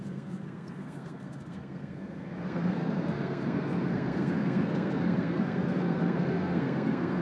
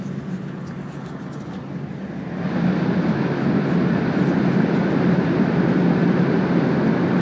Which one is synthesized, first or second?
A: first